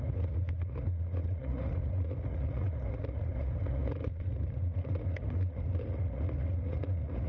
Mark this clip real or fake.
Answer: fake